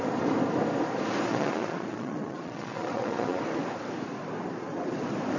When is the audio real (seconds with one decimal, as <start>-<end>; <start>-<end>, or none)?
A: 0.0-1.3; 3.4-5.4